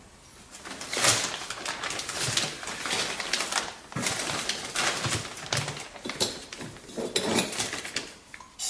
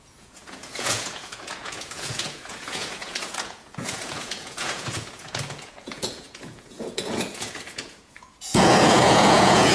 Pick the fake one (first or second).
second